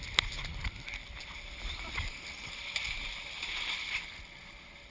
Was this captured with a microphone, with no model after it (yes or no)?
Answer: yes